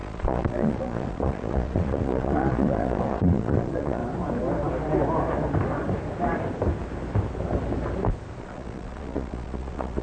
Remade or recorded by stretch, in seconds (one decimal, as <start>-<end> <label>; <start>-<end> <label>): 0.0-4.0 remade; 4.0-8.4 recorded; 8.4-10.0 remade